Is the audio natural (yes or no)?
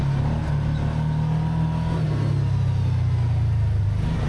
yes